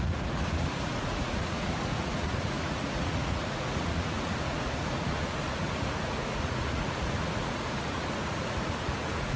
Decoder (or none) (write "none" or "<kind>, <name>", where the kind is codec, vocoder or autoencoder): vocoder, Vocos